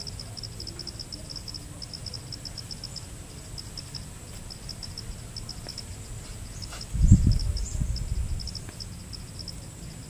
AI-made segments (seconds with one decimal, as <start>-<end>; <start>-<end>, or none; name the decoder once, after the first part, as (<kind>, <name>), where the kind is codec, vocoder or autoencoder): none